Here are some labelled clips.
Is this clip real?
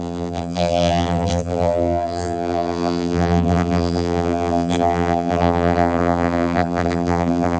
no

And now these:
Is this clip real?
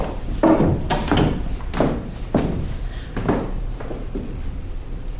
yes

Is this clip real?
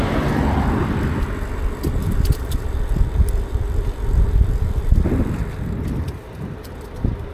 no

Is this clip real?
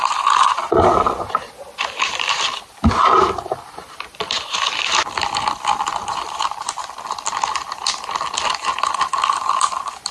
yes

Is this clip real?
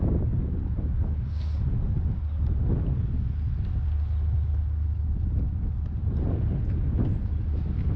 yes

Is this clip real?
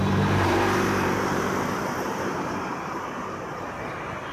no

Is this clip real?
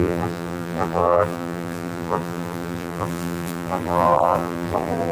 no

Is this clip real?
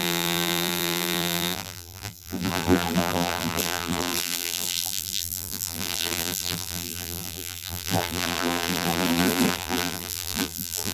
no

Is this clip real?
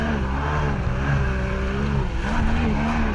yes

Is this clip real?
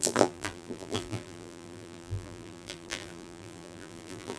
no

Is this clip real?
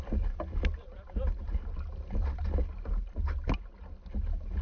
yes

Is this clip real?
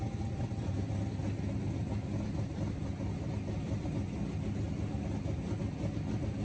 yes